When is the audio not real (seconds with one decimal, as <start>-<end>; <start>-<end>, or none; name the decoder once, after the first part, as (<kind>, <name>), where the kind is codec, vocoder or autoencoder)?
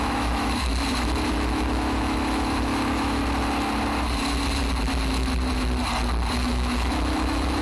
0.0-0.7 (autoencoder, DAC-VAE); 1.3-3.2; 6.3-7.6